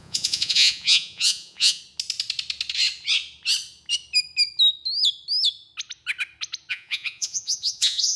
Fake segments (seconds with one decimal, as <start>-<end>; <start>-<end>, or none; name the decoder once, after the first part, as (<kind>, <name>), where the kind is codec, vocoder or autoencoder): 0.0-1.8 (vocoder, Vocos); 6.7-8.2